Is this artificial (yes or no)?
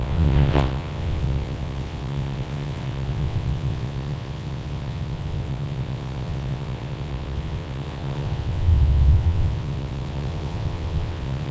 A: yes